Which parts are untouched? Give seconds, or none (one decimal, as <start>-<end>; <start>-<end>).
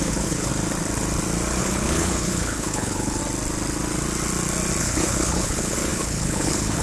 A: 0.5-1.6; 3.2-4.8